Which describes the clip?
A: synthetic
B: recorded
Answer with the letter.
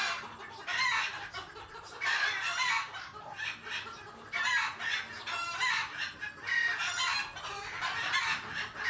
B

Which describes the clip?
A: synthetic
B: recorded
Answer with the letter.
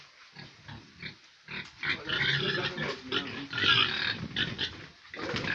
B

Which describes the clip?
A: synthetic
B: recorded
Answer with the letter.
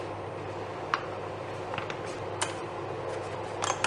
B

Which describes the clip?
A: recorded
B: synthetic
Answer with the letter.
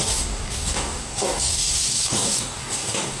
B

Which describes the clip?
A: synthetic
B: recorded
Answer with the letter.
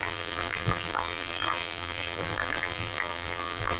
A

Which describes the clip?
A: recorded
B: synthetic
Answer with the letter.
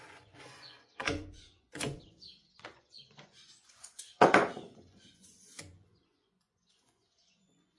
B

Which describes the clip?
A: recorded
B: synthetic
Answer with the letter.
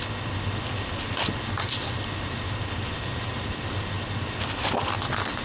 A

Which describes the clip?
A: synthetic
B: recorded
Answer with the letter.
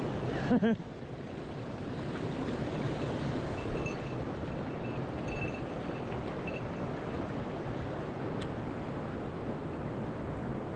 B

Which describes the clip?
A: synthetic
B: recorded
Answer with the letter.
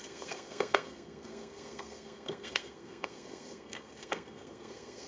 A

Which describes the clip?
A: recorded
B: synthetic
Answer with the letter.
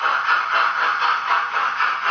A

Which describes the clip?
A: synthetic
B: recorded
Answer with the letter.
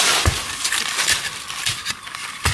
B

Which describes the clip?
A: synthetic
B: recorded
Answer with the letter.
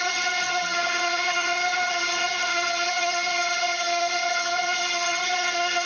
A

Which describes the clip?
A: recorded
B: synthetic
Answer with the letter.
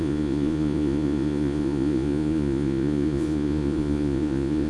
B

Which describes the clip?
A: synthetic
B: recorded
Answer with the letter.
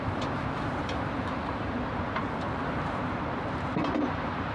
A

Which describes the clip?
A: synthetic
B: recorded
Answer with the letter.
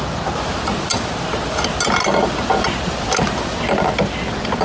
B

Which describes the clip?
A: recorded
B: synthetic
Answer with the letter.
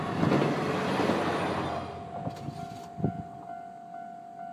A